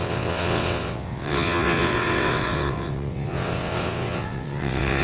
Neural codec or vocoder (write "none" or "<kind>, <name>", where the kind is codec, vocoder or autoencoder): vocoder, WaveNeXt